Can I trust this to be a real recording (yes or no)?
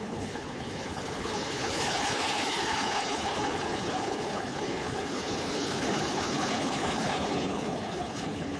no